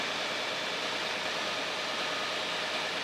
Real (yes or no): yes